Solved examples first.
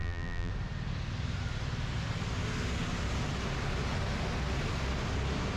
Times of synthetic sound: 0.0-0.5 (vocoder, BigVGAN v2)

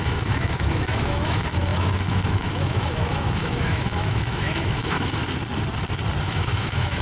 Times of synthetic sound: 0.0-5.2 (autoencoder, DAC-VAE); 6.2-7.0

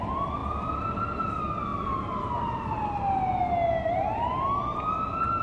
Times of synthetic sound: none

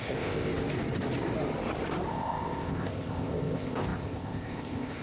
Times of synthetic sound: 0.0-0.5 (codec, ZipCodec); 2.1-5.0

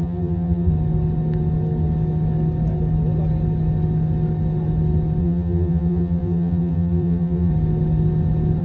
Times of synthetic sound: 0.0-0.7 (vocoder, BigVGAN v2); 5.2-7.5

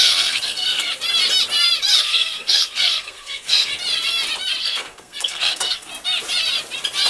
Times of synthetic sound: 0.0-0.9 (codec, SNAC); 2.0-3.7; 4.6-5.9